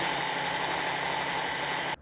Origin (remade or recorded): recorded